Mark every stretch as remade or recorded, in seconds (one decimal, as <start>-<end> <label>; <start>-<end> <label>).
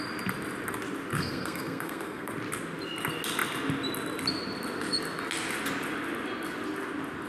0.0-1.1 recorded; 1.1-2.3 remade; 2.3-7.3 recorded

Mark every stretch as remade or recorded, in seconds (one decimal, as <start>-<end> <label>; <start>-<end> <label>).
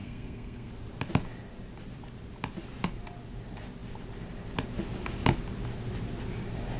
0.0-0.7 remade; 0.7-6.8 recorded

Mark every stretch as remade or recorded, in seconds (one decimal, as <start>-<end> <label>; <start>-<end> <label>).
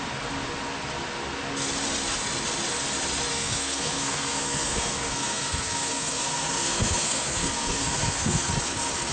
0.0-3.3 recorded; 3.3-8.5 remade; 8.5-9.1 recorded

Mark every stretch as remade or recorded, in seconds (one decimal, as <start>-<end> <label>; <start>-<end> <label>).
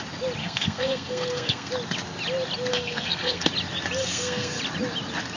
0.0-0.4 recorded; 0.4-1.7 remade; 1.7-2.7 recorded; 2.7-3.5 remade; 3.5-4.0 recorded; 4.0-4.6 remade; 4.6-5.4 recorded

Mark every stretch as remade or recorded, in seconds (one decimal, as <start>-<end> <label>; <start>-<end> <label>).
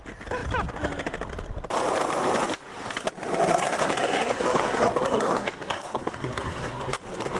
0.0-3.5 recorded; 3.5-7.0 remade; 7.0-7.4 recorded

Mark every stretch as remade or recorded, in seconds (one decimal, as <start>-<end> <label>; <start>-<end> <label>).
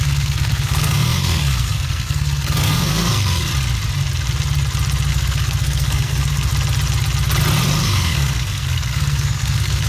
0.0-3.5 remade; 3.5-5.1 recorded; 5.1-6.5 remade; 6.5-7.8 recorded; 7.8-9.9 remade